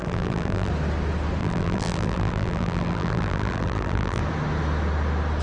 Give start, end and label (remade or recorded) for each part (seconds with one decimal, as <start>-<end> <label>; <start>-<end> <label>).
0.0-0.7 remade; 0.7-1.4 recorded; 1.4-4.2 remade; 4.2-5.4 recorded